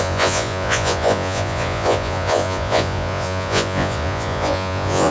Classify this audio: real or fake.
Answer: fake